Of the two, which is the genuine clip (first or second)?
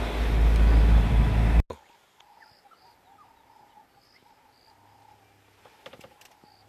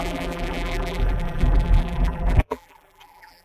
first